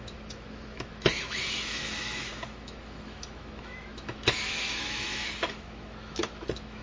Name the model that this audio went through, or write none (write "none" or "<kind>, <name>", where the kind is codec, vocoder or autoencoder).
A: autoencoder, DAC-VAE